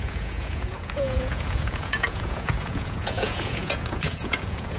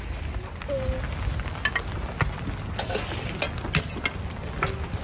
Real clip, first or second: second